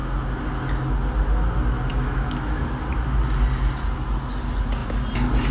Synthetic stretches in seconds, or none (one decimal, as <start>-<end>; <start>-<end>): 1.9-2.7